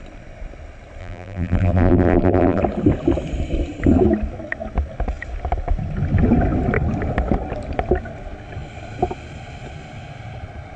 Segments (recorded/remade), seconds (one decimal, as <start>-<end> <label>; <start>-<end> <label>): 0.0-1.0 recorded; 1.0-2.6 remade; 2.6-10.8 recorded